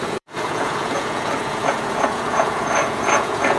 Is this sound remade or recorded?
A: remade